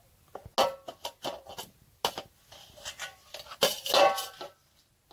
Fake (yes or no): no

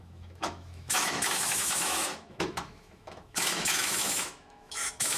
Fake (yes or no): yes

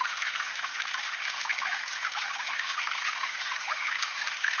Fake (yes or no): yes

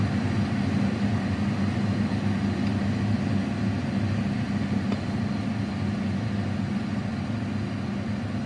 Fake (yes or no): no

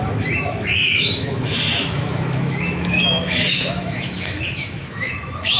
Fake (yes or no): yes